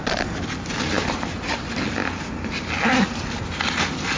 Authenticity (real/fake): real